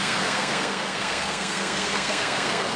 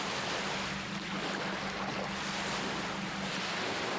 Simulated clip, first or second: first